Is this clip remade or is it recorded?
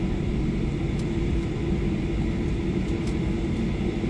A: recorded